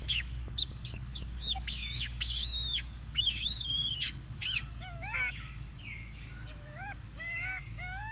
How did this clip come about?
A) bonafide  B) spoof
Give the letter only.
B